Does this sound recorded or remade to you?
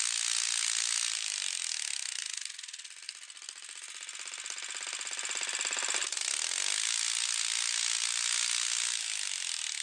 recorded